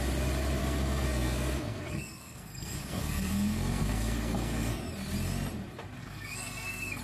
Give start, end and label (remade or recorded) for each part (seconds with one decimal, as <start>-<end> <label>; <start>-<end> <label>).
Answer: 0.0-0.6 recorded; 0.6-4.8 remade; 4.8-6.0 recorded; 6.0-7.0 remade